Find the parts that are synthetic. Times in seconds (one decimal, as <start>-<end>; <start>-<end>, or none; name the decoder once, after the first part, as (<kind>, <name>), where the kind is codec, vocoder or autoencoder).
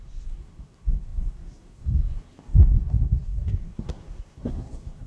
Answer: 0.0-5.1 (codec, SNAC)